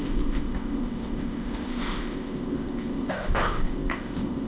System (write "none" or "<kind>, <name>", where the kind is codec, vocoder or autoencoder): codec, ZipCodec